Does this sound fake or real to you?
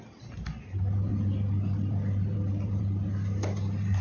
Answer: real